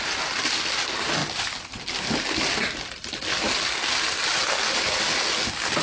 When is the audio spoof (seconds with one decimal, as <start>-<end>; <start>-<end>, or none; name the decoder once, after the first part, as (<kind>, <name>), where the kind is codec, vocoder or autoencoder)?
none